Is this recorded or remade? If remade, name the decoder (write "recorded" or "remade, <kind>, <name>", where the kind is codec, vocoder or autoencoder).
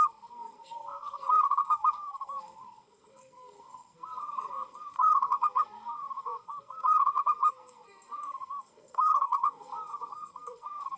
remade, codec, SNAC